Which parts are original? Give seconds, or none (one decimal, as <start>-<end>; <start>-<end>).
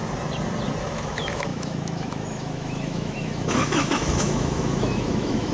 0.0-0.8